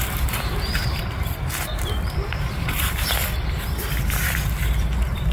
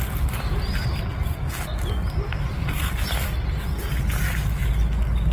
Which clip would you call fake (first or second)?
first